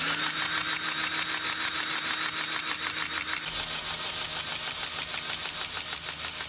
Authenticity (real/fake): real